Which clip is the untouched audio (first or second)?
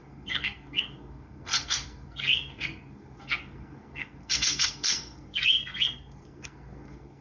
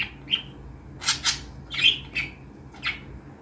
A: second